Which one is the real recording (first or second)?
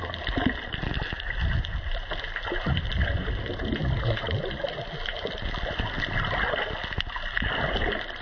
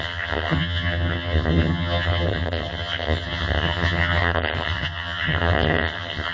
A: first